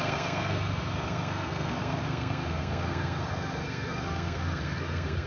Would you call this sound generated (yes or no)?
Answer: yes